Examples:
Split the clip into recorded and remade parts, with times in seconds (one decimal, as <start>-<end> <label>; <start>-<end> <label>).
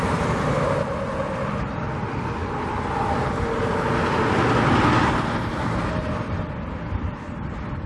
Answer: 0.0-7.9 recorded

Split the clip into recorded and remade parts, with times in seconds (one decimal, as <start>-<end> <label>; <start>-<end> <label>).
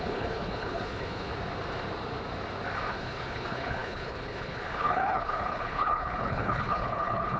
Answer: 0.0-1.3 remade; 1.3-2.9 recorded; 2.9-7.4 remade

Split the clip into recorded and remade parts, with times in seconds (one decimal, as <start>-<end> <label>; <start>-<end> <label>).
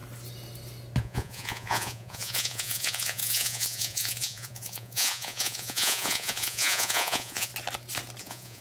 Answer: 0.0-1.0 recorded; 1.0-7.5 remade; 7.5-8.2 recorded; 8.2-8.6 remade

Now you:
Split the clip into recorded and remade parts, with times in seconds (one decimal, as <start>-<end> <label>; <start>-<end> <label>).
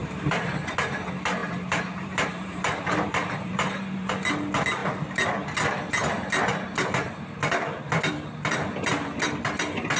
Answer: 0.0-0.5 remade; 0.5-1.4 recorded; 1.4-4.1 remade; 4.1-10.0 recorded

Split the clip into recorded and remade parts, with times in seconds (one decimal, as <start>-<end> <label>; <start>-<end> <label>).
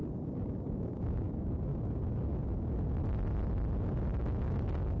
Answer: 0.0-0.7 recorded; 0.7-1.7 remade; 1.7-4.2 recorded; 4.2-5.0 remade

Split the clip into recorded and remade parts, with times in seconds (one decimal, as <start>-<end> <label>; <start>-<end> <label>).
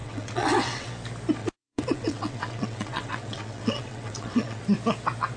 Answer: 0.0-0.9 remade; 0.9-1.4 recorded; 1.4-4.6 remade; 4.6-5.4 recorded